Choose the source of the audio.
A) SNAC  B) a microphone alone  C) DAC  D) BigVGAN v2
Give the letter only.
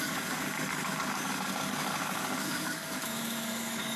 C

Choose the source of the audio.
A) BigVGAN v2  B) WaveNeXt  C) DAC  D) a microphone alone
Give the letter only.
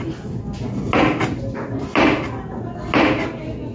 D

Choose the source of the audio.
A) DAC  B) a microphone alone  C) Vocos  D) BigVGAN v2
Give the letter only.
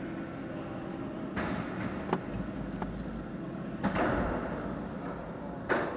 B